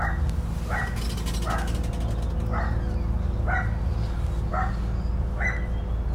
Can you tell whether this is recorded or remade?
recorded